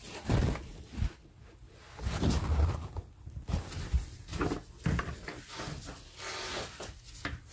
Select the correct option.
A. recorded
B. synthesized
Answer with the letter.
A